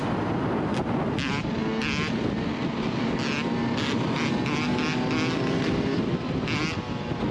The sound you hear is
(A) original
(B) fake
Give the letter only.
A